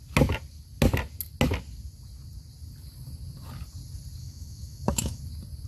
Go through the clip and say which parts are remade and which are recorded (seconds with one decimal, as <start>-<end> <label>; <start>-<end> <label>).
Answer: 0.0-4.2 recorded; 4.2-5.2 remade; 5.2-5.7 recorded